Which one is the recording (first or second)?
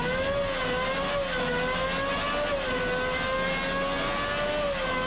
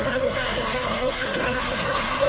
first